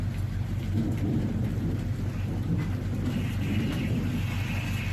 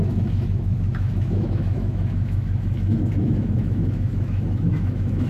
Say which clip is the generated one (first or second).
second